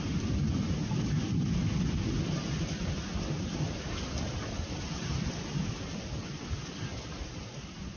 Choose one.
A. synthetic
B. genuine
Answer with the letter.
B